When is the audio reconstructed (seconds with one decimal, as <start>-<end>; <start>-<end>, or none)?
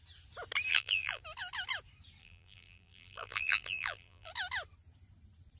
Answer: 0.7-1.2; 2.2-4.3